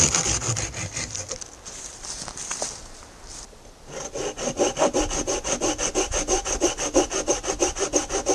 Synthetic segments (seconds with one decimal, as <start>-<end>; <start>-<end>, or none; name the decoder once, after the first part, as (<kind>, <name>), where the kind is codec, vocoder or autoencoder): none